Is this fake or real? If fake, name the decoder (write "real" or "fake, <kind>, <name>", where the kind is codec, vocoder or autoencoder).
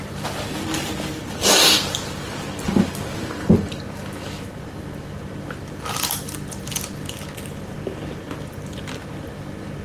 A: real